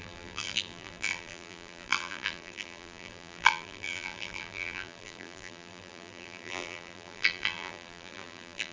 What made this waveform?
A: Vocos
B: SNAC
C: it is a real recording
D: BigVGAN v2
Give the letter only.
D